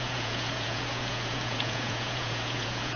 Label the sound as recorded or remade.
remade